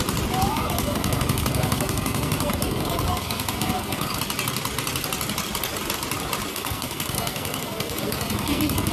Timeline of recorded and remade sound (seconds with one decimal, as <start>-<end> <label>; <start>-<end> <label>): 0.0-0.5 recorded; 0.5-4.2 remade; 4.2-6.5 recorded; 6.5-8.9 remade